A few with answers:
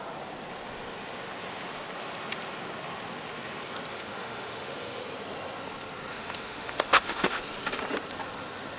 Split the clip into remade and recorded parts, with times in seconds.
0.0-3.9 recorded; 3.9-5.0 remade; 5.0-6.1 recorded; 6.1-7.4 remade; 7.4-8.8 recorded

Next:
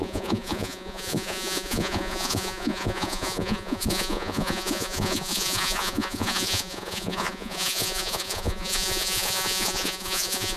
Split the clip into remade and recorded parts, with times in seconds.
0.0-10.6 remade